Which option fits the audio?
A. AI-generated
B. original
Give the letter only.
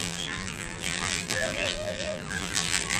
A